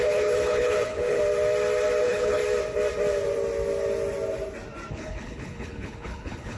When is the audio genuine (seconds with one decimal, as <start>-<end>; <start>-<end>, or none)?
1.2-2.0; 2.4-4.9